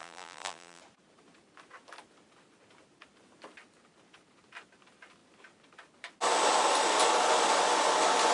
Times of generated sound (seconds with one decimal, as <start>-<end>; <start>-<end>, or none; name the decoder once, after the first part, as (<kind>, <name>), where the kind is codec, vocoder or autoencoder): 0.0-0.8 (vocoder, BigVGAN v2)